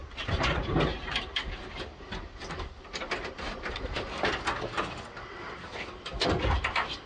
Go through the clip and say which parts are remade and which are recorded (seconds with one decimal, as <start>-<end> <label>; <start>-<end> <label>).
0.0-7.1 recorded